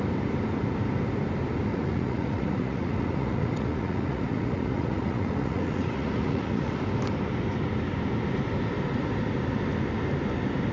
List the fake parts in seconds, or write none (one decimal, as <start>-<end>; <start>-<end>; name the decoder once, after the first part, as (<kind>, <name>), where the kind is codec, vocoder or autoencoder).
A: 1.7-6.8 (vocoder, Vocos)